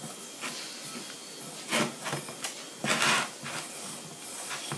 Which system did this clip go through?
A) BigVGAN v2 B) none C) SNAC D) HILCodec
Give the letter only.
B